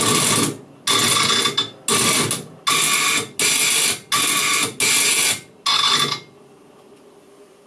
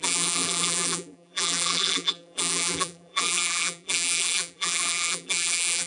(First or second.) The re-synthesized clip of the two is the second